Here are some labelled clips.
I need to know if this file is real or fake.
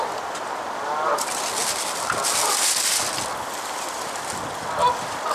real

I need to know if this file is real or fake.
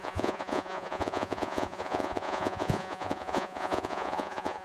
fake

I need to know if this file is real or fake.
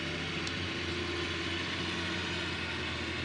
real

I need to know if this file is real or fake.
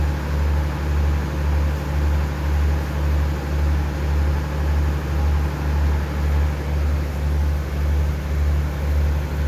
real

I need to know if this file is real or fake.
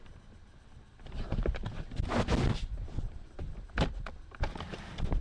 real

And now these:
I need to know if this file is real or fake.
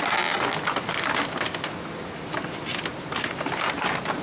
real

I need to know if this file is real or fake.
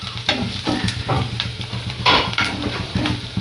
fake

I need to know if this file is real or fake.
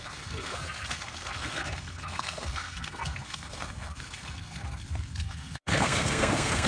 fake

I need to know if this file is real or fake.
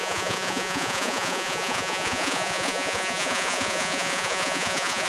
fake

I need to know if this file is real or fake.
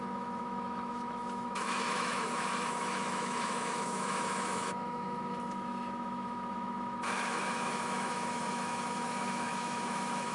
fake